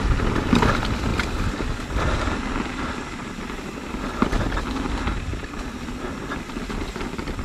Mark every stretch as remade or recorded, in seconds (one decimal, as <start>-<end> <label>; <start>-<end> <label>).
0.0-2.7 recorded; 2.7-3.9 remade; 3.9-5.1 recorded; 5.1-6.3 remade; 6.3-7.4 recorded